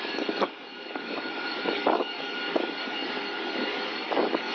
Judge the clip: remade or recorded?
remade